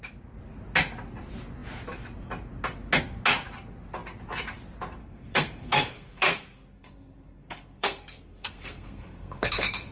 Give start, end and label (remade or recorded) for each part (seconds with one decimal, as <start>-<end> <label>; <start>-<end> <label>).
0.0-5.0 recorded; 5.0-9.9 remade